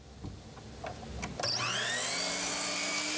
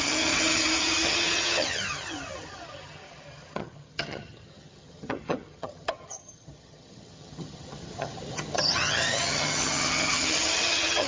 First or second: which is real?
first